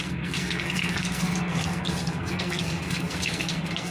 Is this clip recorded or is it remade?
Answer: remade